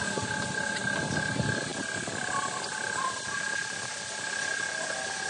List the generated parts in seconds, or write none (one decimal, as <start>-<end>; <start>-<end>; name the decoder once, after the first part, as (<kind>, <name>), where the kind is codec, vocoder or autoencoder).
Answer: 0.0-1.7 (vocoder, BigVGAN v2)